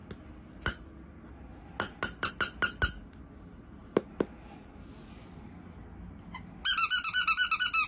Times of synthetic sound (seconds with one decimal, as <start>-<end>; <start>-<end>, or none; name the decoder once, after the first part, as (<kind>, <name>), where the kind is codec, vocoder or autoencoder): none